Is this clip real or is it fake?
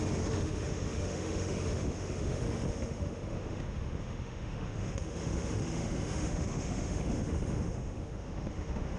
fake